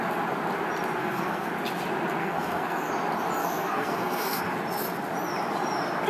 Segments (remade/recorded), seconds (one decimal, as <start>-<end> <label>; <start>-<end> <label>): 0.0-1.0 recorded; 1.0-1.5 remade; 1.5-2.2 recorded; 2.2-2.9 remade; 2.9-3.4 recorded; 3.4-4.4 remade; 4.4-6.1 recorded